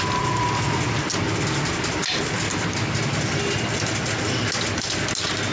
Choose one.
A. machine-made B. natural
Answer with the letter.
B